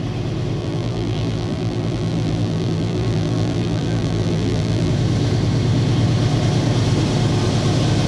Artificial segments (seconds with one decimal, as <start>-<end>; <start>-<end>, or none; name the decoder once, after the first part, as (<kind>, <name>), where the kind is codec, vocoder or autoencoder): 0.6-4.9 (vocoder, BigVGAN v2)